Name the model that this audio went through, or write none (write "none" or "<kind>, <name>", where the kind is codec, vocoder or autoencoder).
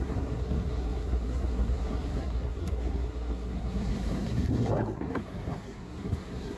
codec, SNAC